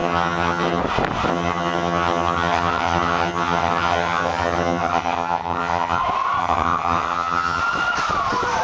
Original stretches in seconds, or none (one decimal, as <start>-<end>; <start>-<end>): 0.8-1.3; 6.0-6.4; 7.6-8.6